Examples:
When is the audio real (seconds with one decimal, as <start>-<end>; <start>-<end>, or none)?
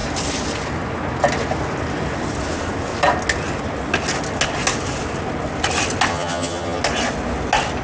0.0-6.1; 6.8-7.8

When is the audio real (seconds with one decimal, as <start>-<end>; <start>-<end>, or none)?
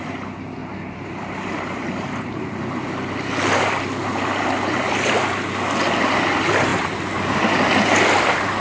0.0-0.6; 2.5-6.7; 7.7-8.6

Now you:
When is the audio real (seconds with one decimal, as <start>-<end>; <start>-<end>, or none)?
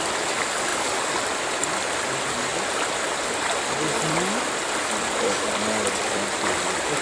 0.0-7.0